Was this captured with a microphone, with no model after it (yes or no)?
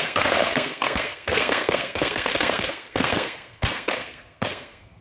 no